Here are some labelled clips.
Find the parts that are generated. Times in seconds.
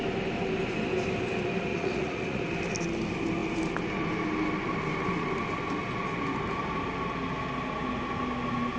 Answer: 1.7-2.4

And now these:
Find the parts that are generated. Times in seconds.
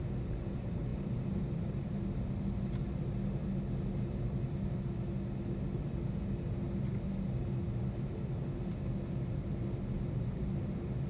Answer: none